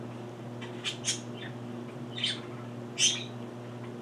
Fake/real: real